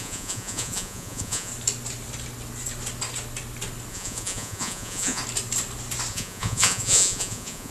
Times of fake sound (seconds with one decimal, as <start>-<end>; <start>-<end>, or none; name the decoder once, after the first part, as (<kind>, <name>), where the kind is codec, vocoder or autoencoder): 0.0-1.5 (vocoder, Vocos); 3.9-5.2; 6.1-7.7